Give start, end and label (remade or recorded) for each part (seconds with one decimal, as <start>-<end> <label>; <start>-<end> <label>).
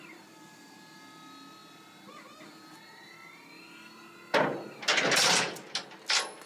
0.0-6.5 recorded